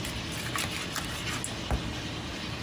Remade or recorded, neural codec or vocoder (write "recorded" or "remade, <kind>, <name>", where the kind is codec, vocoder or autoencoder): recorded